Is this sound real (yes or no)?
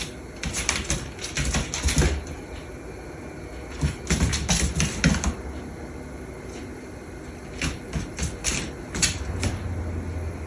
yes